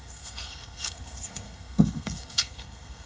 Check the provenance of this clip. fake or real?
fake